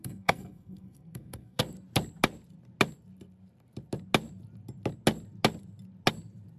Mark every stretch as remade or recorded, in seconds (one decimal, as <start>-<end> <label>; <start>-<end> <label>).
0.0-1.6 remade; 1.6-6.6 recorded